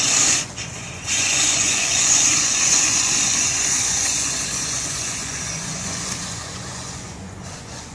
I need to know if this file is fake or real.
fake